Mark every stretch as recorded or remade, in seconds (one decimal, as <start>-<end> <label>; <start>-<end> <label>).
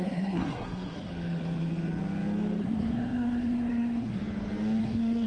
0.0-1.1 remade; 1.1-2.6 recorded; 2.6-4.2 remade; 4.2-4.8 recorded; 4.8-5.3 remade